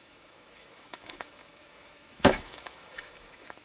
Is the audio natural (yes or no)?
no